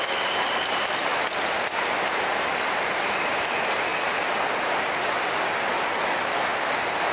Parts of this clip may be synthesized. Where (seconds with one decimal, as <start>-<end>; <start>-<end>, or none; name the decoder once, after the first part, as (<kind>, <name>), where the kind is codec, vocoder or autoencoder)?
0.0-3.9 (vocoder, BigVGAN v2); 5.2-7.1